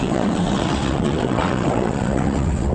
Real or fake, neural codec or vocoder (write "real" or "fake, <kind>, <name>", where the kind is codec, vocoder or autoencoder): fake, vocoder, WaveNeXt